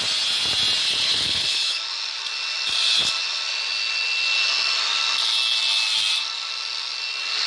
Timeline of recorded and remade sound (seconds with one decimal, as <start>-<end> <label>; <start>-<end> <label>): 0.0-0.8 recorded; 0.8-1.8 remade; 1.8-7.5 recorded